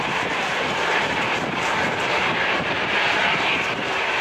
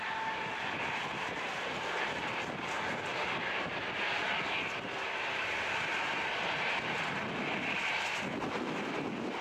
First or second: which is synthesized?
first